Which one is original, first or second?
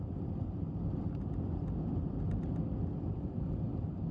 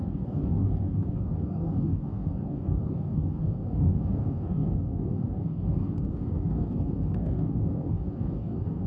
first